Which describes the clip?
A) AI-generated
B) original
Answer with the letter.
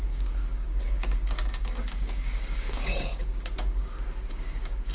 A